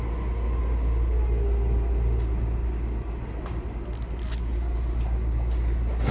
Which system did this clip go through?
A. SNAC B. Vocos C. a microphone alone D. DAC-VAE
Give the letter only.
C